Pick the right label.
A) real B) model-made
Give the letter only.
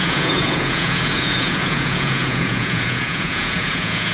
B